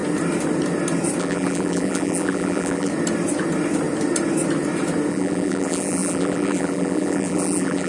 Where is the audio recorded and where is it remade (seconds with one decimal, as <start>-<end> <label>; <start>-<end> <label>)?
0.0-1.2 recorded; 1.2-2.9 remade; 2.9-5.1 recorded; 5.1-7.9 remade